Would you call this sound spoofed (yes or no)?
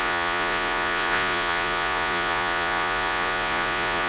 yes